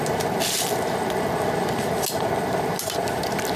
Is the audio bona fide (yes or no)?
yes